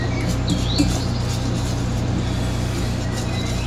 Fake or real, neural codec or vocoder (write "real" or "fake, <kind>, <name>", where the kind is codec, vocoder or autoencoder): real